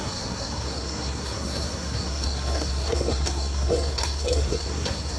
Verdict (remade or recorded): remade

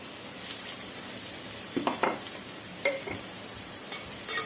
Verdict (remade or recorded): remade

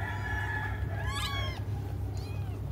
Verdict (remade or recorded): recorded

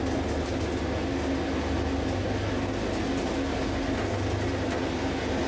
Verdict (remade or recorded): recorded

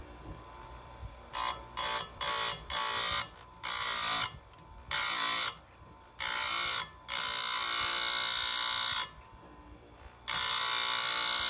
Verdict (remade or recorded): remade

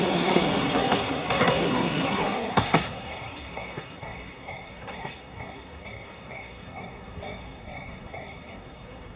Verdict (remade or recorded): remade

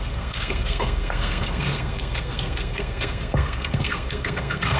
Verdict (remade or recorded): remade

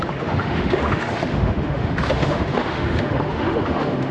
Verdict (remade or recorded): remade